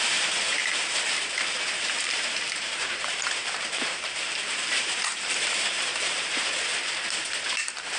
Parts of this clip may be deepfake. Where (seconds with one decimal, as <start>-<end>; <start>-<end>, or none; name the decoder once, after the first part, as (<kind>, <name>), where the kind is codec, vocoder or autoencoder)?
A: 0.0-6.7 (vocoder, BigVGAN v2)